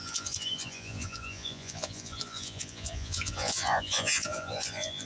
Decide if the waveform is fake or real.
fake